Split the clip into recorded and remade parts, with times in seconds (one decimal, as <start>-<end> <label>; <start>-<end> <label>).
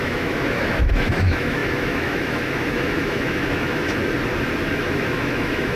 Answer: 0.0-4.0 remade; 4.0-4.7 recorded; 4.7-5.8 remade